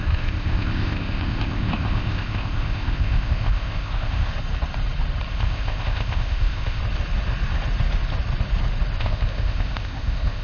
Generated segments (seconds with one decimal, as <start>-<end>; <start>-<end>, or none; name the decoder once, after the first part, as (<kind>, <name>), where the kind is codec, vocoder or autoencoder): 0.0-4.3 (codec, ZipCodec); 5.3-6.8; 9.0-10.4